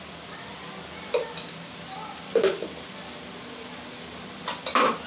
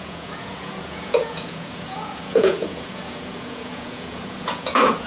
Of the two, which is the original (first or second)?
first